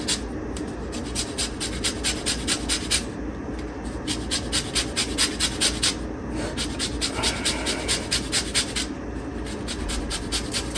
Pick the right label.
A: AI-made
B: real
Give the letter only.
B